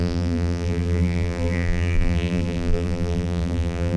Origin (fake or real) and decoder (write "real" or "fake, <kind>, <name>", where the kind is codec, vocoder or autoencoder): fake, vocoder, BigVGAN v2